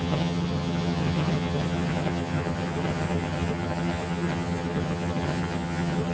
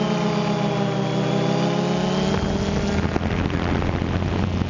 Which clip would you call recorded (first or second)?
second